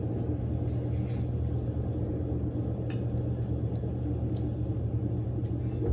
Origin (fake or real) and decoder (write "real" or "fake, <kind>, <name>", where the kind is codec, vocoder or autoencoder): real